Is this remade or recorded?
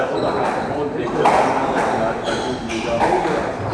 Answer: recorded